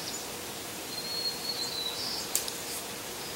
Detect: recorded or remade remade